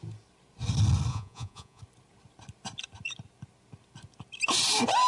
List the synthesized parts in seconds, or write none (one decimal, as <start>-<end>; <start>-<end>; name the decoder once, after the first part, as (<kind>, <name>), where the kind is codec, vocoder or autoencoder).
1.1-1.8 (vocoder, Vocos)

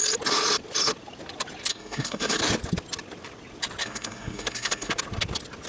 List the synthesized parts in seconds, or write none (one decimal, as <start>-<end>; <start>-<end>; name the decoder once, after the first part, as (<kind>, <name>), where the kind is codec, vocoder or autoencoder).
1.7-2.4 (codec, SNAC); 3.8-4.9

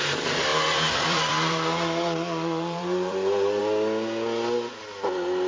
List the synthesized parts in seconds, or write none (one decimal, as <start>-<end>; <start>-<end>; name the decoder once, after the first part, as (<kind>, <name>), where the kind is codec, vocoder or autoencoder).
0.5-3.6 (vocoder, BigVGAN v2)